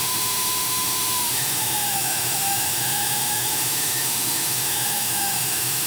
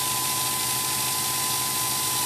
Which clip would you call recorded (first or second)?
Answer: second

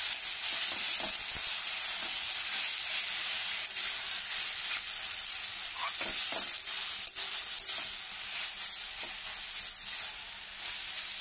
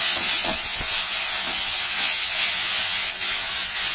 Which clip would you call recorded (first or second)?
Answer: first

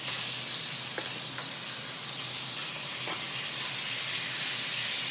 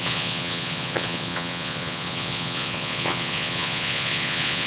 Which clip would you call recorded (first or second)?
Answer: first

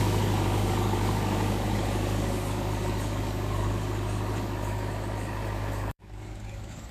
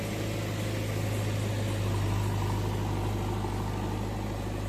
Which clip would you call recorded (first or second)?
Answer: second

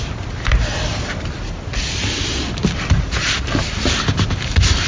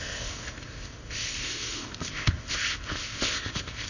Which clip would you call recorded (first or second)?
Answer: first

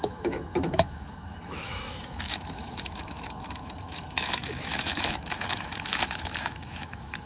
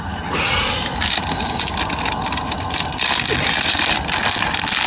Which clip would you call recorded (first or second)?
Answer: second